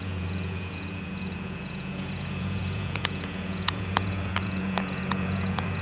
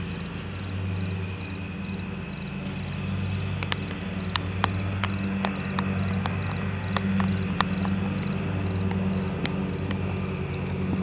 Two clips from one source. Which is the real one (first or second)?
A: second